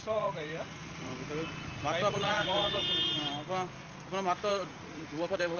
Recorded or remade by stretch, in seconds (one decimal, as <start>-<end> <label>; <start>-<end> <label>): 0.0-1.1 remade; 1.1-2.1 recorded; 2.1-2.8 remade; 2.8-4.5 recorded; 4.5-5.6 remade

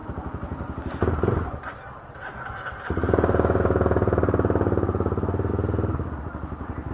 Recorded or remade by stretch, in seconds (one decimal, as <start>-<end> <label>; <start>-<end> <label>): 0.0-6.9 recorded

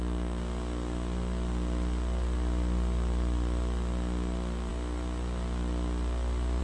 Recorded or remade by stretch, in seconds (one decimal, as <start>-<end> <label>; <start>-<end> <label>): 0.0-6.6 recorded